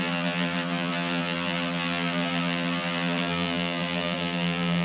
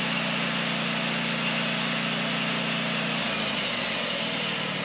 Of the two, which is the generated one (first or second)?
first